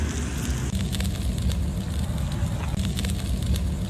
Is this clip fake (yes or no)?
no